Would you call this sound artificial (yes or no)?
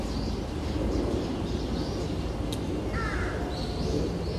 no